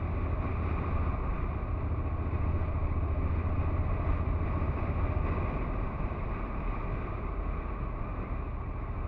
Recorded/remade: recorded